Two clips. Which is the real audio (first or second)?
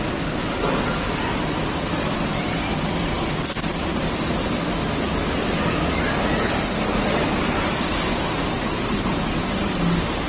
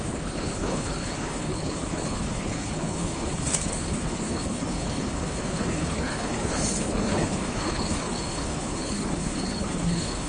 first